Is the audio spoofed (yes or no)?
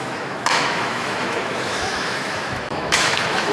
yes